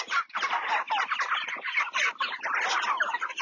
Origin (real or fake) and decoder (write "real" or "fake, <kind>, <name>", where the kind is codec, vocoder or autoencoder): real